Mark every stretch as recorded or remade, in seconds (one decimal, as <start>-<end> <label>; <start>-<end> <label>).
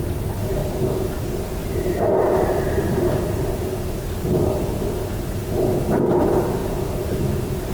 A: 0.0-1.6 recorded; 1.6-3.2 remade; 3.2-7.7 recorded